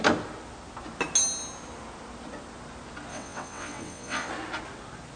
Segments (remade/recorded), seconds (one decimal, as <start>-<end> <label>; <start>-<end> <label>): 0.0-3.1 recorded; 3.1-4.3 remade; 4.3-5.2 recorded

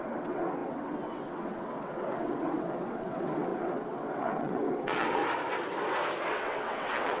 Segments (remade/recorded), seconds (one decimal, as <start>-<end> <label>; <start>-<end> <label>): 0.0-5.2 remade; 5.2-6.3 recorded; 6.3-7.2 remade

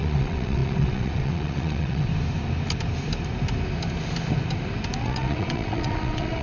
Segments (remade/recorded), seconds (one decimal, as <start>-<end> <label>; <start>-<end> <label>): 0.0-2.1 remade; 2.1-5.0 recorded; 5.0-6.4 remade

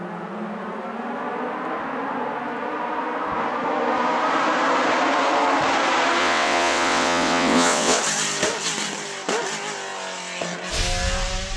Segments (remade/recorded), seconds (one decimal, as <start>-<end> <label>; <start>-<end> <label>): 0.0-6.2 recorded; 6.2-8.0 remade; 8.0-11.6 recorded

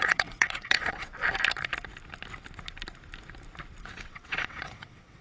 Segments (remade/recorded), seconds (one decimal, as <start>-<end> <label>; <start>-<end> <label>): 0.0-1.1 remade; 1.1-3.8 recorded; 3.8-5.2 remade

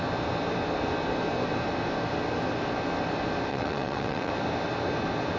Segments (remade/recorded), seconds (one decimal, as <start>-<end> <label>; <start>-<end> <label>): 0.0-3.5 recorded; 3.5-4.3 remade; 4.3-5.4 recorded